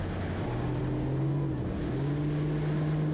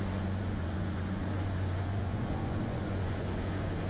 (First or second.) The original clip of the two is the first